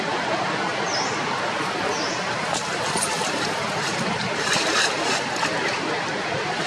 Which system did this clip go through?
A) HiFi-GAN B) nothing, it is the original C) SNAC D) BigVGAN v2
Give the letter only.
D